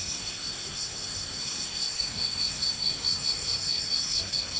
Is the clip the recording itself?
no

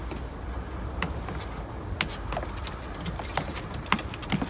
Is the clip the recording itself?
yes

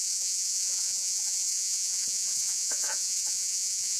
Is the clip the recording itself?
no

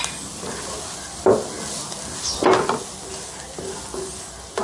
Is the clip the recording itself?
yes